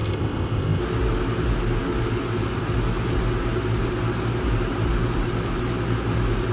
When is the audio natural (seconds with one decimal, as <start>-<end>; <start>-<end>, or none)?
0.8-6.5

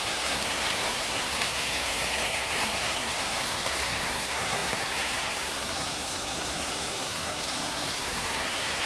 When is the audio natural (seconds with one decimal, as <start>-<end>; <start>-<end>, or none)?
none

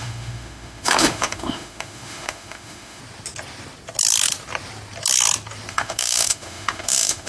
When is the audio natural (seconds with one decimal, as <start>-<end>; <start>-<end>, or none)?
3.0-5.7